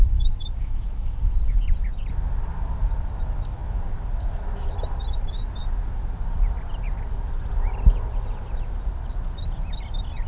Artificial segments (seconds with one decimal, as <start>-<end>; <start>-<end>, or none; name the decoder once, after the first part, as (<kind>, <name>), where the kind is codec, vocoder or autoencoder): 0.6-1.2 (autoencoder, DAC-VAE)